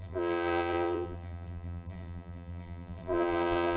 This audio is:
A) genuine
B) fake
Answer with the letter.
B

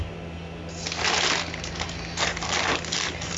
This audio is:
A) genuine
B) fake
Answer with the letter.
A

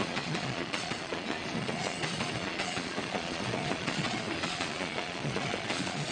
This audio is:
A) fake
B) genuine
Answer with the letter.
A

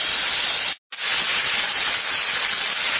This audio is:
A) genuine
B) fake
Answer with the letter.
A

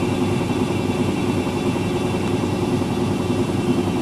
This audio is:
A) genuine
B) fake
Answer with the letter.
A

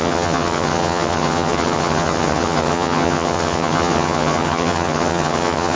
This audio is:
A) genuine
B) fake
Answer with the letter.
B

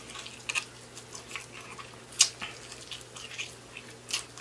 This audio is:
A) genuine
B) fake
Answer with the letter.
A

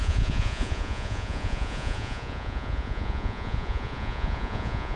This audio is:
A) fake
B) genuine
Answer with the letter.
A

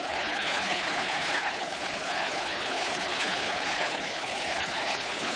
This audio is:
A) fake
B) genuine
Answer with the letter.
A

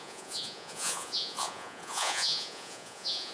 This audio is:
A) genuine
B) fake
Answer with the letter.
B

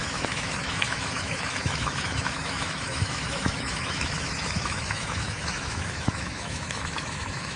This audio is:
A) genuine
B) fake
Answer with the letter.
B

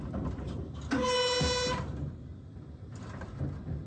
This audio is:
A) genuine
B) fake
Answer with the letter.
A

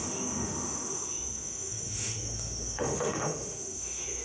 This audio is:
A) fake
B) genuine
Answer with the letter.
A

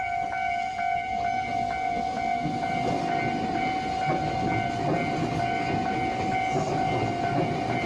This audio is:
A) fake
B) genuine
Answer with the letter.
B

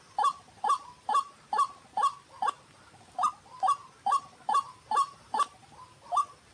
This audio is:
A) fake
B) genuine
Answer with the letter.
B